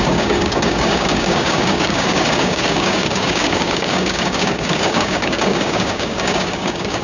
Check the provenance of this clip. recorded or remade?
remade